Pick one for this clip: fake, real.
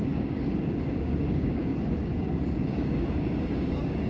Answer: fake